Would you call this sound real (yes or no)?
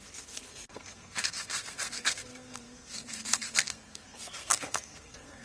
no